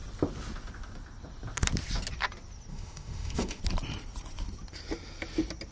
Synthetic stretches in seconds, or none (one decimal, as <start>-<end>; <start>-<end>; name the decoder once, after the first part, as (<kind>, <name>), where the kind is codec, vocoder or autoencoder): 2.7-3.6 (autoencoder, DAC-VAE)